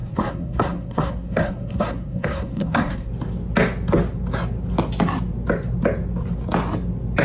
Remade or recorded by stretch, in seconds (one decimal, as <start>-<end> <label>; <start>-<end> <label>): 0.0-3.1 remade; 3.1-7.2 recorded